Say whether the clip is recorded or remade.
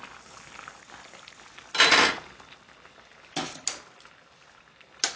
recorded